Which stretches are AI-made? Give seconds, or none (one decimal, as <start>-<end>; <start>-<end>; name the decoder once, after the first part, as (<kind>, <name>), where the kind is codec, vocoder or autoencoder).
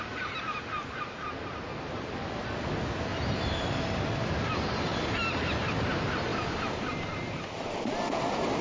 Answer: 3.1-3.7 (vocoder, BigVGAN v2); 4.9-5.7; 6.3-7.4